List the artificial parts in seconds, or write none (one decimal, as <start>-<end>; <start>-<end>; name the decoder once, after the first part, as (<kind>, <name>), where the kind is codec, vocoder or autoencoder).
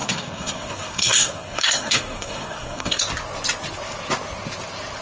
0.0-3.0 (codec, SNAC)